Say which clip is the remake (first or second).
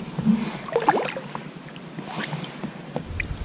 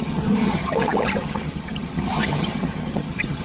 second